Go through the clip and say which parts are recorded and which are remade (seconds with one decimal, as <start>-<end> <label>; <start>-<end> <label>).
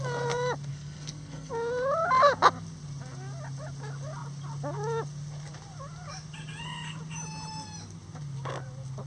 0.0-0.7 recorded; 0.7-1.5 remade; 1.5-9.1 recorded